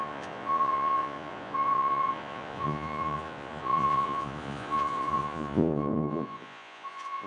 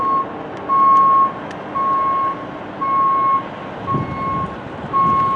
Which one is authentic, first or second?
second